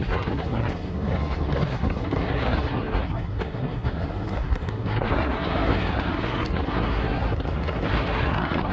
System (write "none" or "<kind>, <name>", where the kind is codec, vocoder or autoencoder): codec, SNAC